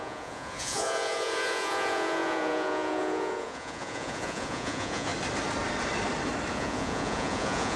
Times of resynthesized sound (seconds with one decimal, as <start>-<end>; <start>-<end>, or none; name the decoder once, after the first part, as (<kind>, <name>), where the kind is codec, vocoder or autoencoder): 0.0-5.1 (vocoder, Vocos); 6.5-7.8